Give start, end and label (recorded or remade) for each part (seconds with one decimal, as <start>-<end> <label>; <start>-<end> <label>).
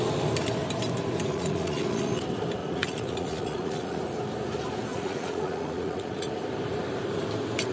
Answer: 0.0-1.3 recorded; 1.3-2.2 remade; 2.2-2.6 recorded; 2.6-4.0 remade; 4.0-4.9 recorded; 4.9-6.3 remade; 6.3-7.7 recorded